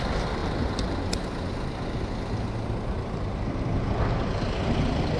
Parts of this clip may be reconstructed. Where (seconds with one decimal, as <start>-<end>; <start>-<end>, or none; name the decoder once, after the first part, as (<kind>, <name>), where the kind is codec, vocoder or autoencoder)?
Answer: none